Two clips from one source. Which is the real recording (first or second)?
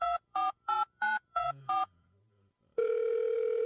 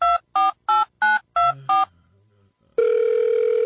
second